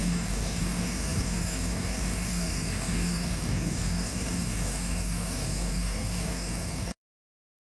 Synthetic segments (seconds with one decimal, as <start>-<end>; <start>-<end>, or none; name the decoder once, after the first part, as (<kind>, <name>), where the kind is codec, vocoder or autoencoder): 0.0-7.6 (codec, DAC)